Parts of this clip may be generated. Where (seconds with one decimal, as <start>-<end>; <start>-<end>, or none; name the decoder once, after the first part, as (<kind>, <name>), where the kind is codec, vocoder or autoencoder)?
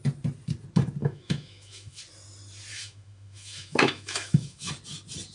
1.0-2.0 (autoencoder, DAC-VAE); 2.7-4.7